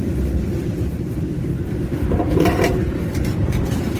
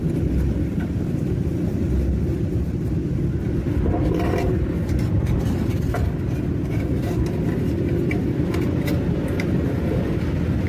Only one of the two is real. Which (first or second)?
second